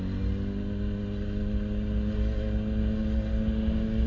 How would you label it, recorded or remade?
recorded